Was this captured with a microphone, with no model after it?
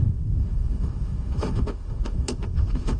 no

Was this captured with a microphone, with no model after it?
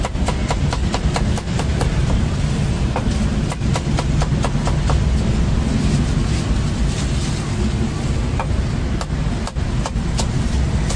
yes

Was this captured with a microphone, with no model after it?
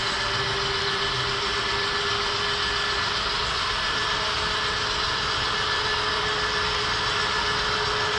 yes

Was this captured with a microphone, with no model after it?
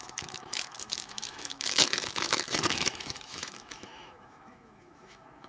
no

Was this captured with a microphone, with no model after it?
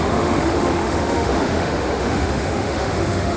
no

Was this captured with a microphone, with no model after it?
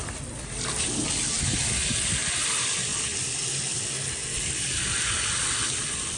yes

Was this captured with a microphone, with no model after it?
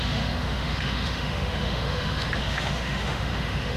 no